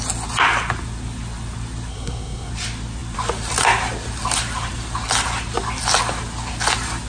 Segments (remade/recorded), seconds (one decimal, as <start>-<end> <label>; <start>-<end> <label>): 0.0-1.9 recorded; 1.9-2.5 remade; 2.5-7.1 recorded